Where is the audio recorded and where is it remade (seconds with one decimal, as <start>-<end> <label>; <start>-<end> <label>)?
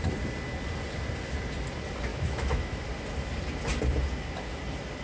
0.0-2.1 recorded; 2.1-2.8 remade; 2.8-5.0 recorded